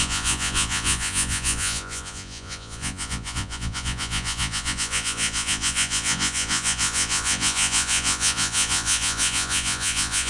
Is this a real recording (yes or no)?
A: no